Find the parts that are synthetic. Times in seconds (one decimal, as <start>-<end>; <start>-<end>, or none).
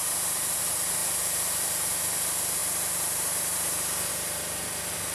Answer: 1.0-1.9